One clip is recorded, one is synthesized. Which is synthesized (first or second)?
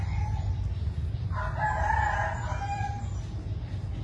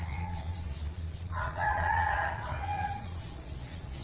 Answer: second